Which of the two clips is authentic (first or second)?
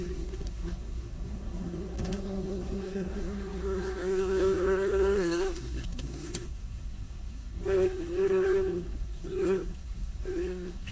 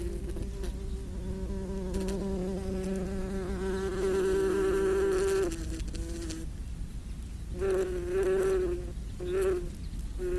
second